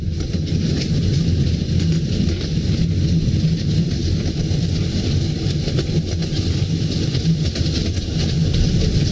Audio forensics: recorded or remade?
recorded